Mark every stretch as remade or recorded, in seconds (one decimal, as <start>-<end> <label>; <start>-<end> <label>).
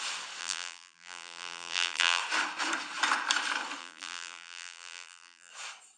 0.0-0.4 recorded; 0.4-2.2 remade; 2.2-3.8 recorded; 3.8-5.5 remade; 5.5-6.0 recorded